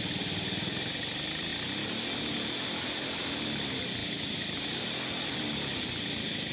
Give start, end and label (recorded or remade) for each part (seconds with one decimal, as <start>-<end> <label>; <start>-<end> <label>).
0.0-6.5 recorded

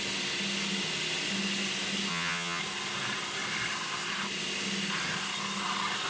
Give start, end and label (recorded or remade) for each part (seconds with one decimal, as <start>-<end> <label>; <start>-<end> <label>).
0.0-2.1 recorded; 2.1-2.6 remade; 2.6-6.1 recorded

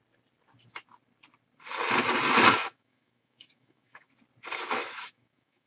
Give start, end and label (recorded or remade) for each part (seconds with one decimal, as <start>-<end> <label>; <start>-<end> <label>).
0.0-2.6 recorded; 2.6-4.1 remade; 4.1-4.8 recorded; 4.8-5.7 remade

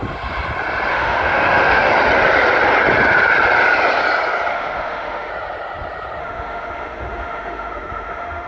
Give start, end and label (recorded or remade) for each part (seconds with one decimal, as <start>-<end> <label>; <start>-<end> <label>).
0.0-0.9 recorded; 0.9-1.9 remade; 1.9-4.5 recorded; 4.5-5.3 remade; 5.3-6.2 recorded; 6.2-8.5 remade

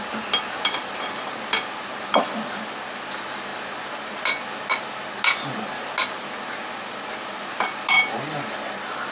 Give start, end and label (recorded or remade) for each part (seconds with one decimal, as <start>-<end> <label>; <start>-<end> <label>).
0.0-9.1 recorded